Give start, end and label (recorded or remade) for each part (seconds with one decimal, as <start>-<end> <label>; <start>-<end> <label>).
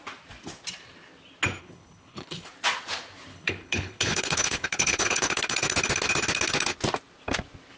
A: 0.0-1.6 recorded; 1.6-2.5 remade; 2.5-3.3 recorded; 3.3-5.4 remade; 5.4-7.8 recorded